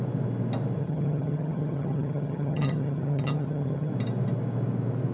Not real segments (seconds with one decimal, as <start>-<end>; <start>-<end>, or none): 0.8-3.9